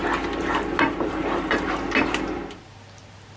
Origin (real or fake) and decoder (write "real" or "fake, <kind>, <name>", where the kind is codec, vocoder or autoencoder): real